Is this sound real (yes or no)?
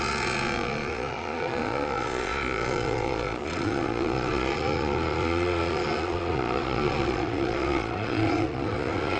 no